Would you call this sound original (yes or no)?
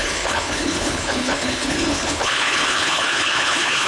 no